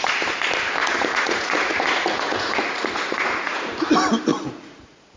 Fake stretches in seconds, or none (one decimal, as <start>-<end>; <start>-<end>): 0.8-3.9; 4.3-5.2